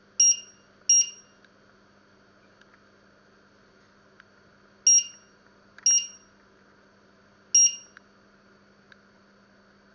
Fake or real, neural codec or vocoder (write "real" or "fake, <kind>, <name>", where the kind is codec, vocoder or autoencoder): real